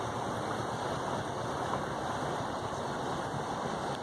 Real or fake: real